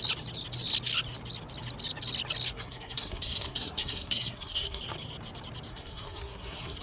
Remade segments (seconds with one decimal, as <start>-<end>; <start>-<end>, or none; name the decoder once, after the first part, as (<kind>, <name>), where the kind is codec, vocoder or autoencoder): 2.5-4.8 (codec, SNAC); 5.7-6.8